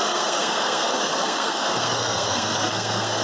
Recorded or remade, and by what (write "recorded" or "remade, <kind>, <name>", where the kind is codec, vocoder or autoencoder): remade, codec, SNAC